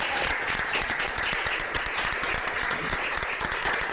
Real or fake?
fake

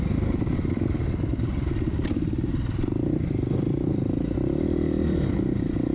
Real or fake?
real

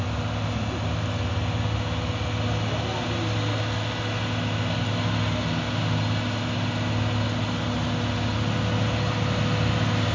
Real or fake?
real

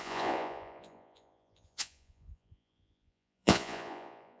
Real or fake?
fake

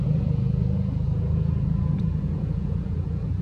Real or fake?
fake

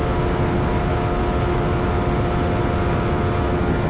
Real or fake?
real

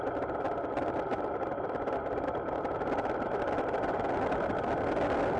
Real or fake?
real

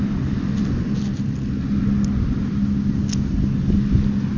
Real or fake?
real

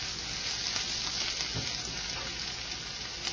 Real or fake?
real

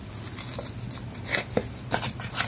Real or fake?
real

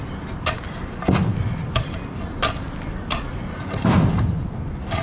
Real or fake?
real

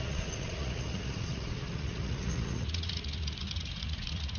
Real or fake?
fake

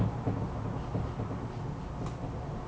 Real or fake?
real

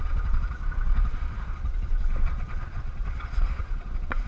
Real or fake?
fake